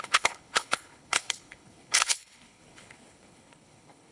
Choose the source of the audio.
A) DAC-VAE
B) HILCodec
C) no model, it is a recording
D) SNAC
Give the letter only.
B